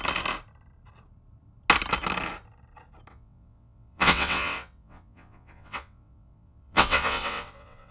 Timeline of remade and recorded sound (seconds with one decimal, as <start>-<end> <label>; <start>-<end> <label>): 0.0-3.1 recorded; 3.1-7.9 remade